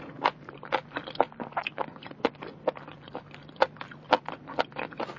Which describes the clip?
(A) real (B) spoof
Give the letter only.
A